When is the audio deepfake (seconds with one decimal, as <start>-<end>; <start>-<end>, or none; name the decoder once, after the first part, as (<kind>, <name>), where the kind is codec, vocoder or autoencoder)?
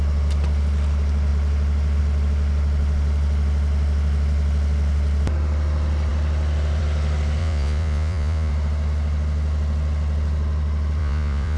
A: 7.4-8.5 (vocoder, Vocos); 11.0-11.6